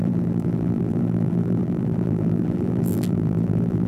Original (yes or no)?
no